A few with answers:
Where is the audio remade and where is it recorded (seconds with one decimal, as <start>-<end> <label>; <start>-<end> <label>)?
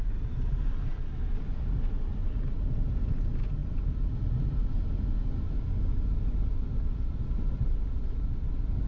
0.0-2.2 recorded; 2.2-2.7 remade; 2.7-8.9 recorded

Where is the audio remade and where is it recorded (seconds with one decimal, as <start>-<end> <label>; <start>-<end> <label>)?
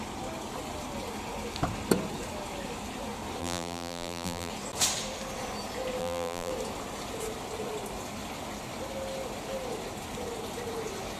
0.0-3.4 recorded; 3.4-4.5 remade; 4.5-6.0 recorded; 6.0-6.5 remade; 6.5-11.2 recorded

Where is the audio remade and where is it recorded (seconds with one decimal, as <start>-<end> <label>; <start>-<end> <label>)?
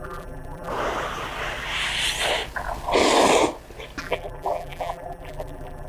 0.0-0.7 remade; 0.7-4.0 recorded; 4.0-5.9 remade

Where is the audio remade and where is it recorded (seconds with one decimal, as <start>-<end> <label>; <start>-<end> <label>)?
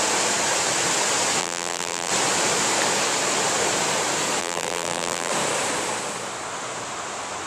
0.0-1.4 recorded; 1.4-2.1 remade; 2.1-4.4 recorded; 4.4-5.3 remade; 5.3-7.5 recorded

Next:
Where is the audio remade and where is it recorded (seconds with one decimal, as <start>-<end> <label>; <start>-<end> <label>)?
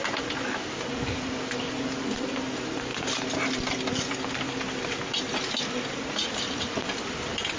0.0-2.9 remade; 2.9-6.1 recorded; 6.1-7.6 remade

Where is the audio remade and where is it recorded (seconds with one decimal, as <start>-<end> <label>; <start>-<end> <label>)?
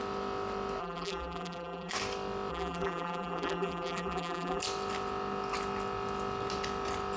0.0-0.8 recorded; 0.8-1.9 remade; 1.9-2.5 recorded; 2.5-4.6 remade; 4.6-7.2 recorded